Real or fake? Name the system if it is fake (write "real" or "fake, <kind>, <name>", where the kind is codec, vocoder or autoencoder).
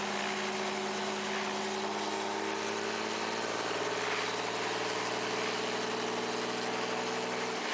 real